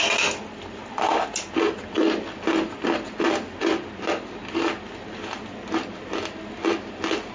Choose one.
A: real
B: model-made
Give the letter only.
A